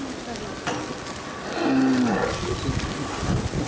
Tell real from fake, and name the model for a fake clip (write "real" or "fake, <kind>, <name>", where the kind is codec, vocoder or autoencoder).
real